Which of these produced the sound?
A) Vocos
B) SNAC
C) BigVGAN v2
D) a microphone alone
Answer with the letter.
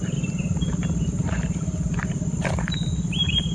D